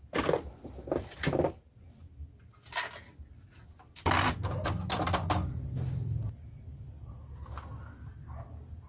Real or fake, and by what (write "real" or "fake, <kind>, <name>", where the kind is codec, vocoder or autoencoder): real